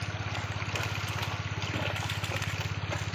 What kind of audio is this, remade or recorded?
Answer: recorded